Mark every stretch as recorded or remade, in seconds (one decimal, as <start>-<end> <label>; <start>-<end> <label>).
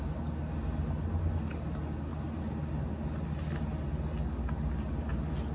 0.0-5.5 recorded